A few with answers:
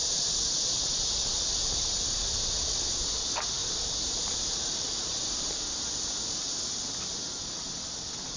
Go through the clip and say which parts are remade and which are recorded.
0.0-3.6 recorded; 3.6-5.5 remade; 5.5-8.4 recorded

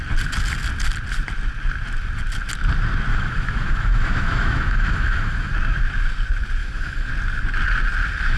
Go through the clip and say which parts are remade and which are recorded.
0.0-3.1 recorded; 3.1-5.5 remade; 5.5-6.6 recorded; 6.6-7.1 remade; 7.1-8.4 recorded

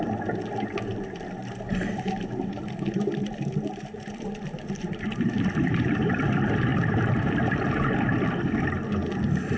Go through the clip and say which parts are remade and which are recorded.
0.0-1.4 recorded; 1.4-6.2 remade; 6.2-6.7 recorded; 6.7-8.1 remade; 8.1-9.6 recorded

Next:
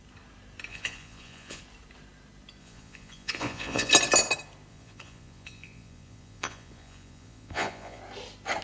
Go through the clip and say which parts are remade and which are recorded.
0.0-0.7 recorded; 0.7-1.6 remade; 1.6-2.6 recorded; 2.6-3.9 remade; 3.9-4.7 recorded; 4.7-8.0 remade; 8.0-8.6 recorded